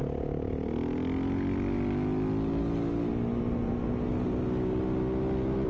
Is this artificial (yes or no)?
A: no